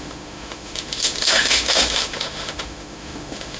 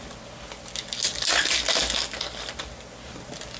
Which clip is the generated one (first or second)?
first